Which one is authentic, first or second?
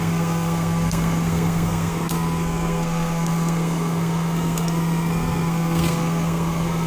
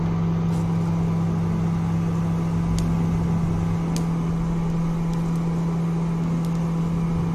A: second